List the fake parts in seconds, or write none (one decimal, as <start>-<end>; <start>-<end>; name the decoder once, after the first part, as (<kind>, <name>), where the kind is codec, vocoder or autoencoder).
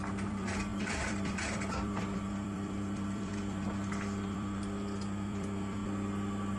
0.0-5.8 (vocoder, BigVGAN v2)